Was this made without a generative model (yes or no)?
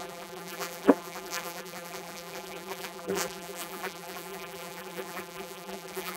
no